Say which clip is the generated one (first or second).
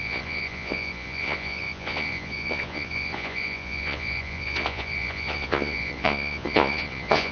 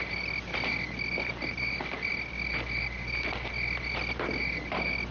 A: first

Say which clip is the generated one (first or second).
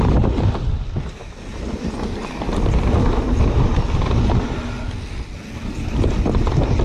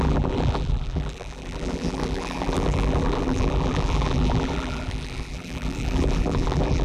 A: second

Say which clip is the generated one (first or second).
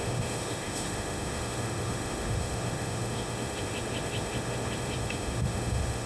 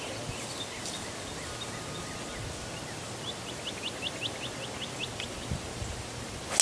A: first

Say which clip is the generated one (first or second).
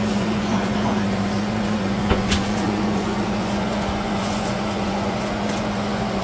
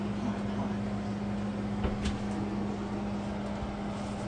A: first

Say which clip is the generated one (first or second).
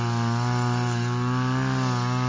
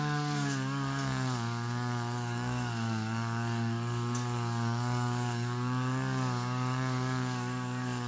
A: second